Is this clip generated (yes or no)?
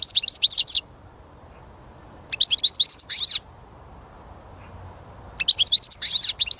no